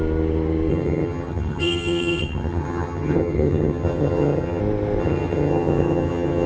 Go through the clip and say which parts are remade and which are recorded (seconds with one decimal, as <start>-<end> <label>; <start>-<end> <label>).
0.0-0.7 recorded; 0.7-4.6 remade; 4.6-5.0 recorded; 5.0-6.5 remade